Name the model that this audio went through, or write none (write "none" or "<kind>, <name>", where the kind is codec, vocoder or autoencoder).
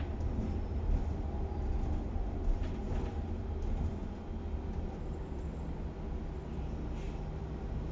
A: none